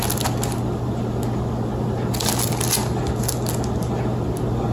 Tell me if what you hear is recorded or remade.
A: recorded